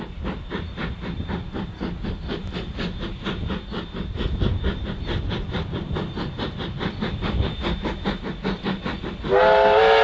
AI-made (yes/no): no